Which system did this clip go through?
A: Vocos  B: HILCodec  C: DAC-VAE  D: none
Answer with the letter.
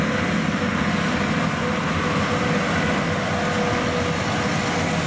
D